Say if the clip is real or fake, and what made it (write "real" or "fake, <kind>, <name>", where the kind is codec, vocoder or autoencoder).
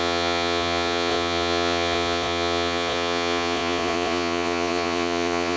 fake, vocoder, Vocos